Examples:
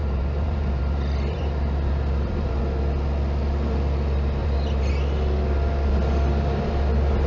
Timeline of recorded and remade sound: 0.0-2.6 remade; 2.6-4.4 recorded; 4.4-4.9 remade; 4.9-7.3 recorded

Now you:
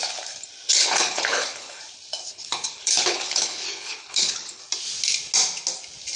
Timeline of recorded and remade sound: 0.0-0.7 recorded; 0.7-1.8 remade; 1.8-2.3 recorded; 2.3-4.6 remade; 4.6-6.2 recorded

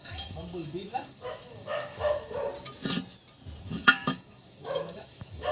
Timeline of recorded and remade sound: 0.0-2.5 remade; 2.5-3.6 recorded; 3.6-5.5 remade

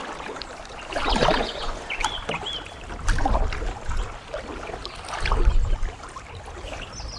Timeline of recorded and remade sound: 0.0-1.4 recorded; 1.4-2.3 remade; 2.3-7.2 recorded

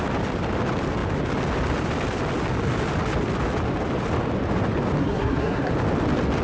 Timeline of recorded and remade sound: 0.0-5.0 recorded; 5.0-5.7 remade; 5.7-6.4 recorded

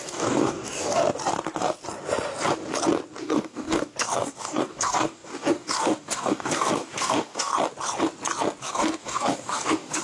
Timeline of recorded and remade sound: 0.0-1.0 remade; 1.0-3.2 recorded; 3.2-7.5 remade; 7.5-8.6 recorded; 8.6-10.0 remade